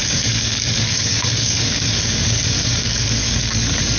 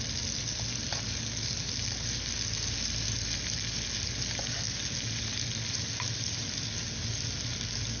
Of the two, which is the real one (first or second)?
second